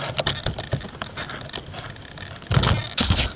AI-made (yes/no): no